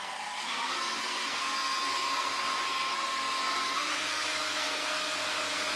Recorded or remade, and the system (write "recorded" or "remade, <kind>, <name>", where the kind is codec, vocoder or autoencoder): remade, codec, SNAC